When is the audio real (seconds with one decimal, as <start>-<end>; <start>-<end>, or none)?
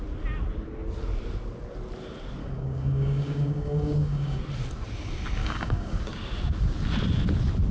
0.0-2.4; 4.4-5.4; 6.0-7.7